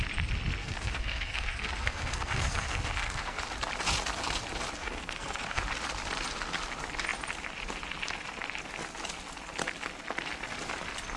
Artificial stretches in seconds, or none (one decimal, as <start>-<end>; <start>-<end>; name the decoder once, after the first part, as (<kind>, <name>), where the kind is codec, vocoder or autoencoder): 0.6-3.4 (codec, SNAC); 4.8-5.6